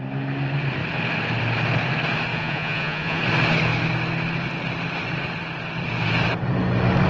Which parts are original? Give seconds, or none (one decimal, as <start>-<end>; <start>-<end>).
0.0-2.3; 3.2-7.1

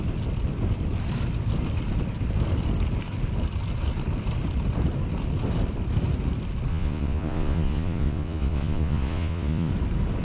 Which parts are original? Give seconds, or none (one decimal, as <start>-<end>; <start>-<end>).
0.0-6.7; 9.7-10.2